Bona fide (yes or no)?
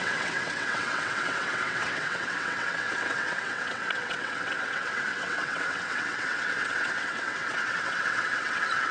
no